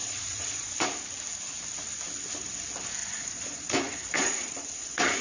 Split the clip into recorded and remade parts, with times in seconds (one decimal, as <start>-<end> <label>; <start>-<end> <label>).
0.0-0.8 remade; 0.8-3.0 recorded; 3.0-5.2 remade